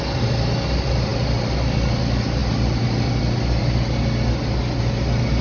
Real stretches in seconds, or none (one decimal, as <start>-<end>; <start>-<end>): 0.0-5.4